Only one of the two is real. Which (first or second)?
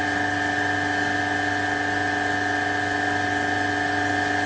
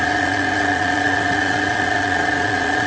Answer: first